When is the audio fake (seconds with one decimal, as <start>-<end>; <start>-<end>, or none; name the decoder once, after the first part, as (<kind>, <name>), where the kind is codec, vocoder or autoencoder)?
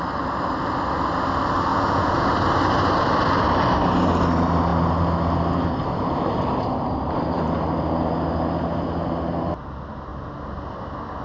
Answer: 1.7-2.3 (vocoder, Vocos)